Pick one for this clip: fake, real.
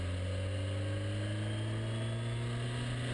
real